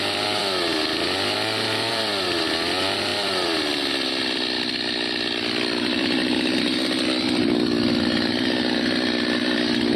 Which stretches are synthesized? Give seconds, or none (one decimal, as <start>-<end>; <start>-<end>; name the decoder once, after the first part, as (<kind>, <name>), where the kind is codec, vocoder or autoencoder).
0.0-0.4 (vocoder, BigVGAN v2); 1.9-10.0